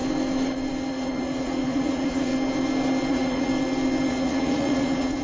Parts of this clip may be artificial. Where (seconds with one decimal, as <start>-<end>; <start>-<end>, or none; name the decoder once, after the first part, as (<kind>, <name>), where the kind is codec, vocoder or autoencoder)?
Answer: 0.9-2.3 (vocoder, Vocos); 3.1-3.5; 4.1-5.2